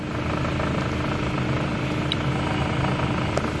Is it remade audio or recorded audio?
recorded